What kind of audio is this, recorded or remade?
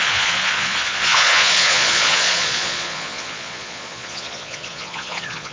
remade